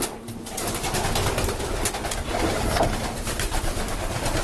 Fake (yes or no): no